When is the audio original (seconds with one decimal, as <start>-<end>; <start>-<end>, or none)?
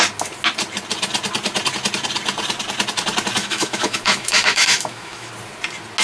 0.0-3.4; 5.3-6.0